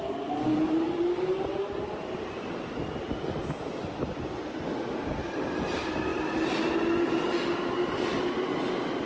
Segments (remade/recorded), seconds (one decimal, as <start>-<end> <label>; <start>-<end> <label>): 0.0-0.5 recorded; 0.5-2.7 remade; 2.7-9.1 recorded